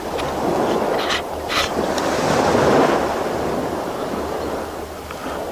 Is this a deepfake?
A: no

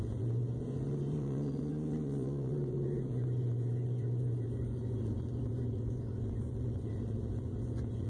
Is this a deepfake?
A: yes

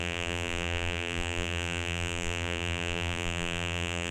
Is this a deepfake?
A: yes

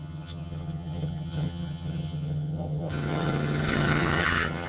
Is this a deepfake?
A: yes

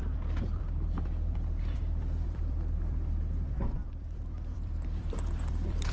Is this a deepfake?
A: yes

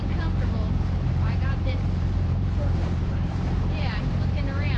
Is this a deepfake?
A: yes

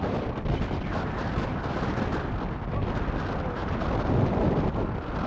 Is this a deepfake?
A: no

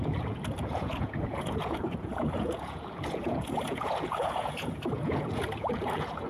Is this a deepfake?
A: yes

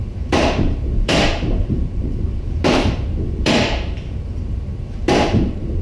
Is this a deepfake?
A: yes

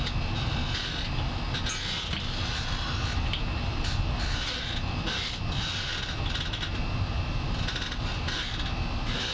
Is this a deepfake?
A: no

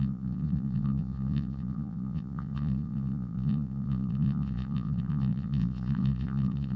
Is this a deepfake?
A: yes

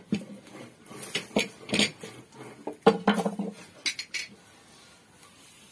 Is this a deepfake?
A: no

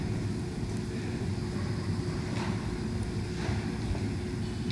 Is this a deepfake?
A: no